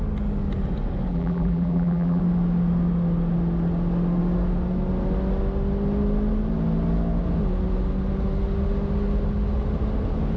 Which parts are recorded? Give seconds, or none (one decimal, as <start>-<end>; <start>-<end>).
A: 0.0-1.1; 2.2-10.4